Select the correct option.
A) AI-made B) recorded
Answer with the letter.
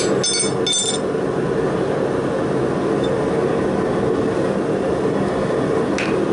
B